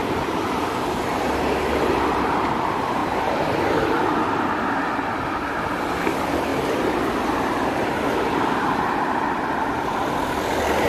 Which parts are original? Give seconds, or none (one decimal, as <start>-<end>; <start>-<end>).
0.0-3.0; 4.3-6.5; 7.8-10.9